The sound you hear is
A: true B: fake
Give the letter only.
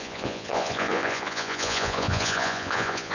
B